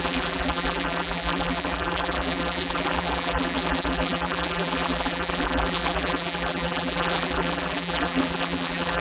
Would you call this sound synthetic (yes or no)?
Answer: yes